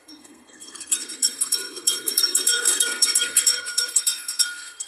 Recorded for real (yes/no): no